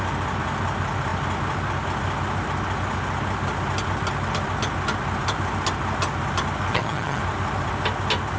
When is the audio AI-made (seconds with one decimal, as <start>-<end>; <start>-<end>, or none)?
6.7-7.2